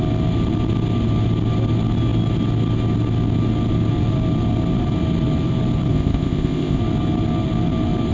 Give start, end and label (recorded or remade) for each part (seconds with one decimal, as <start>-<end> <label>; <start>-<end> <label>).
0.0-5.9 recorded; 5.9-6.8 remade; 6.8-8.1 recorded